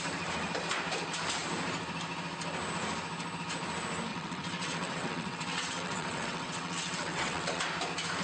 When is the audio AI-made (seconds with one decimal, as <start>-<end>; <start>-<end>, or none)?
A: 4.1-7.6